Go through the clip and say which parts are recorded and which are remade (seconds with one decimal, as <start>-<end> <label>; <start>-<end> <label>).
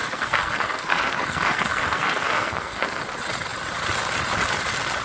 0.0-3.0 remade; 3.0-5.0 recorded